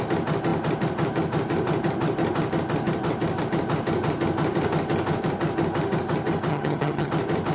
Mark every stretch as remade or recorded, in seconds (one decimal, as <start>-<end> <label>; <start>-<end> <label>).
0.0-6.5 recorded; 6.5-7.1 remade; 7.1-7.5 recorded